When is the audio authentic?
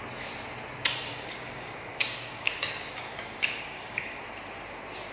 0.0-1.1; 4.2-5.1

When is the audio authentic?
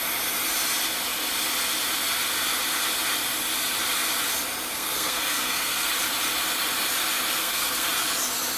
0.0-4.7; 5.9-7.4; 7.9-8.6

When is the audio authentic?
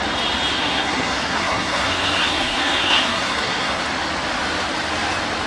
0.0-0.5; 3.8-5.5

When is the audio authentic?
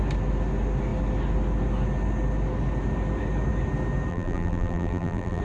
0.0-4.1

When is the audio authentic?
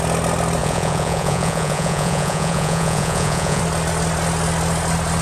0.0-0.6; 3.6-5.2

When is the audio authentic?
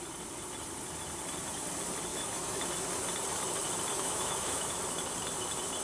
0.0-2.1; 2.6-3.9; 4.8-5.8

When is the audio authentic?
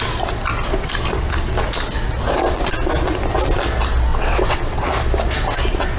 0.0-4.1; 4.8-6.0